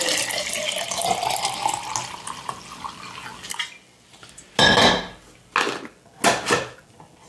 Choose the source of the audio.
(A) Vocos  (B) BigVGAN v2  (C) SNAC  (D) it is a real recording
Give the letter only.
D